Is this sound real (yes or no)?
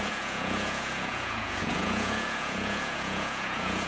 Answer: no